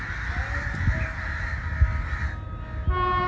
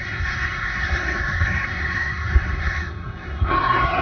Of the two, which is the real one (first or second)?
first